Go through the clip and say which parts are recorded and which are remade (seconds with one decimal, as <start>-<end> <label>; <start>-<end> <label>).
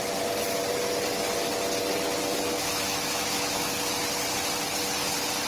0.0-2.5 recorded; 2.5-3.8 remade; 3.8-5.5 recorded